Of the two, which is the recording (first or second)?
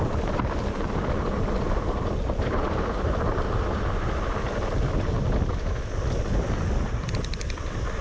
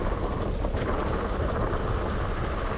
second